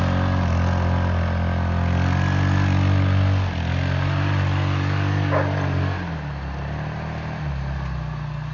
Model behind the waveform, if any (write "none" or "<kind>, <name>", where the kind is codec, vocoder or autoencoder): none